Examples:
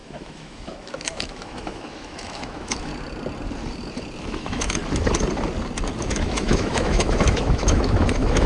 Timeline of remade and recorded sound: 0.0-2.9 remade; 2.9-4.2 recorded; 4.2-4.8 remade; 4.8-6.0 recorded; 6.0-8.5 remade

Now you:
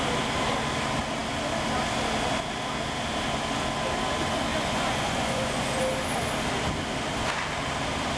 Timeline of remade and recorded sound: 0.0-4.5 recorded; 4.5-5.8 remade; 5.8-8.2 recorded

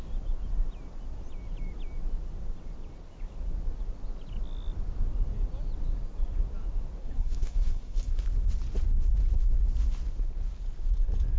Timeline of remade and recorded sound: 0.0-7.0 recorded; 7.0-8.2 remade; 8.2-11.4 recorded